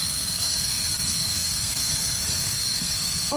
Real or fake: fake